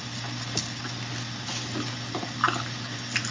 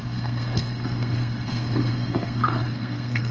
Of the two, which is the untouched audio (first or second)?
first